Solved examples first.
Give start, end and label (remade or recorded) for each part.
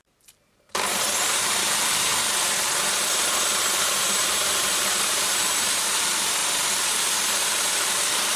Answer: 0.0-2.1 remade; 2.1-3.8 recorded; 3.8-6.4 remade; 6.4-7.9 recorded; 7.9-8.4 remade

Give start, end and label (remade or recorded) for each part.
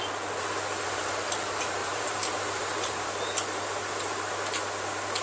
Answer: 0.0-1.8 recorded; 1.8-2.9 remade; 2.9-5.2 recorded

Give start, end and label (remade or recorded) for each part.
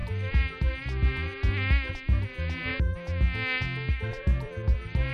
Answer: 0.0-2.7 remade; 2.7-3.9 recorded; 3.9-5.1 remade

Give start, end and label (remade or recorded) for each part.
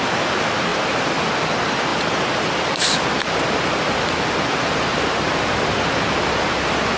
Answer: 0.0-0.7 recorded; 0.7-1.3 remade; 1.3-1.9 recorded; 1.9-6.1 remade; 6.1-7.0 recorded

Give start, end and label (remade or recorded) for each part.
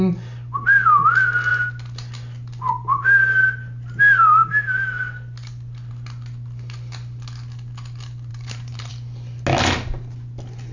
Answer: 0.0-8.3 recorded; 8.3-8.9 remade; 8.9-10.7 recorded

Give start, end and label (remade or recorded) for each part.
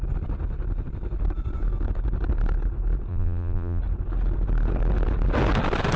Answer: 0.0-3.1 recorded; 3.1-3.8 remade; 3.8-6.0 recorded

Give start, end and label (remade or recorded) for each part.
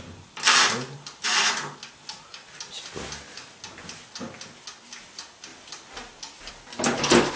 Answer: 0.0-5.5 recorded; 5.5-6.5 remade; 6.5-7.4 recorded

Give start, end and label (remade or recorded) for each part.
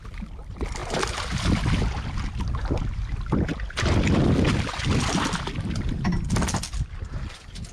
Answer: 0.0-7.7 recorded